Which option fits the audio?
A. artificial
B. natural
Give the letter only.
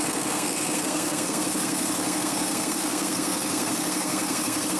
A